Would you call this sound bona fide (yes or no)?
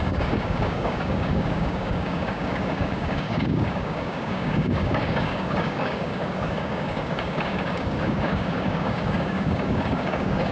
no